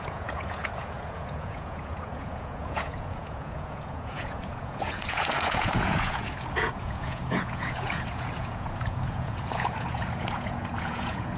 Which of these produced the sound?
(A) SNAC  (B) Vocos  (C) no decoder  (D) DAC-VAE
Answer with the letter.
B